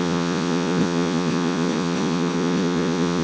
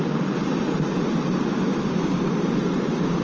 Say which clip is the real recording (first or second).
second